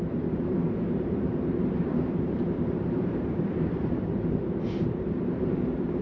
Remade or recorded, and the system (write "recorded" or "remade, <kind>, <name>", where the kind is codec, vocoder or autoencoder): remade, vocoder, BigVGAN v2